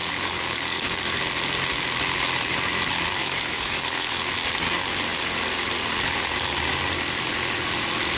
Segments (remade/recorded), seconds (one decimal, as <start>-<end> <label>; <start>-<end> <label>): 0.0-1.2 remade; 1.2-3.2 recorded; 3.2-4.3 remade; 4.3-8.2 recorded